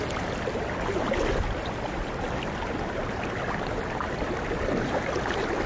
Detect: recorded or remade recorded